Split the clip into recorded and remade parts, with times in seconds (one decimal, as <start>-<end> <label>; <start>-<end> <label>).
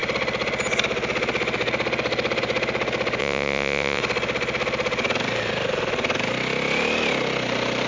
0.0-3.2 recorded; 3.2-4.0 remade; 4.0-7.9 recorded